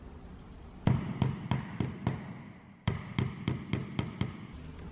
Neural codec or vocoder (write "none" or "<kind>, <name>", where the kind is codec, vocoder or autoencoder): none